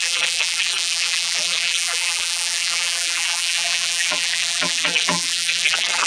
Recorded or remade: remade